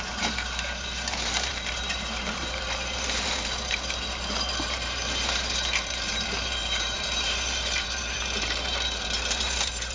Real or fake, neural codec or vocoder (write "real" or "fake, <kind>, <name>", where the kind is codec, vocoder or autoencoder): fake, vocoder, BigVGAN v2